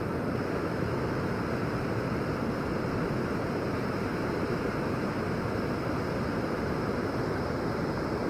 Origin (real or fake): fake